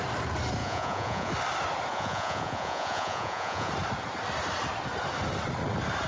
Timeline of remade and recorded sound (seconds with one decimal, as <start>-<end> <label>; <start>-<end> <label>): 0.0-0.6 recorded; 0.6-1.3 remade; 1.3-1.9 recorded; 1.9-3.7 remade; 3.7-6.1 recorded